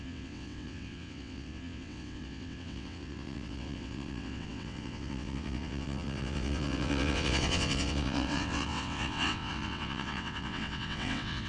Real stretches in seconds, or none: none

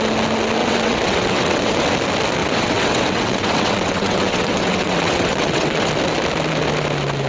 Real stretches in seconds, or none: 0.0-0.6; 1.9-2.4; 5.9-7.3

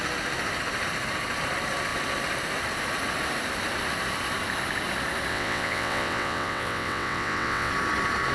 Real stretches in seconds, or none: 0.0-5.3; 7.7-8.3

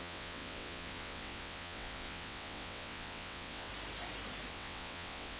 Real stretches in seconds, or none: 3.7-4.5

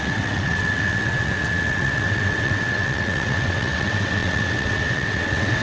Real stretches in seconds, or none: none

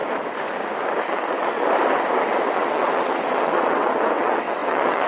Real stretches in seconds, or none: 0.0-1.1; 1.6-2.5